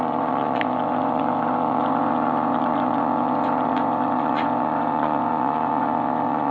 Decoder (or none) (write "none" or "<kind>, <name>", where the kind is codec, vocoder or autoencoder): vocoder, Vocos